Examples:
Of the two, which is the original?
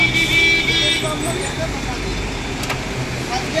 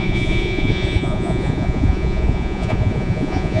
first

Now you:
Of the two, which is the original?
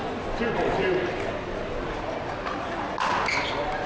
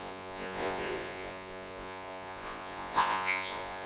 first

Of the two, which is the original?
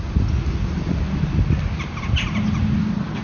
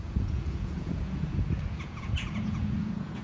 first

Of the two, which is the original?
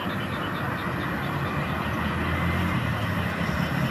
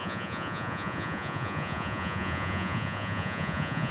first